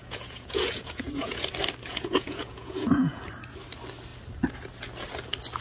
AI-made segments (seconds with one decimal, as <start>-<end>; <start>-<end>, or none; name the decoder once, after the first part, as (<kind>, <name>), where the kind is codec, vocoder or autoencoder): 0.0-1.5 (vocoder, Vocos); 1.9-3.2